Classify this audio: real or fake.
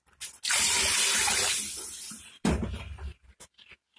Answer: real